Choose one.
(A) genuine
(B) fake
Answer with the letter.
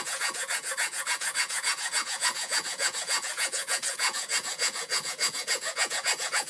B